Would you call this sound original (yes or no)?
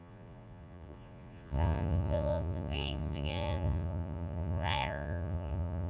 no